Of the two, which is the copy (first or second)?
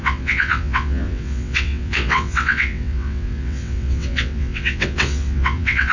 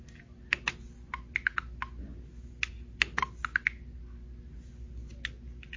first